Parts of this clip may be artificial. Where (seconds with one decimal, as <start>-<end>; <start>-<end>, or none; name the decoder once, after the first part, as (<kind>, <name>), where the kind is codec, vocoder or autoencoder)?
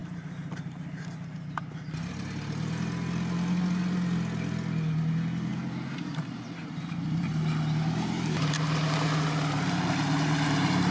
0.0-2.1 (vocoder, BigVGAN v2); 5.5-8.6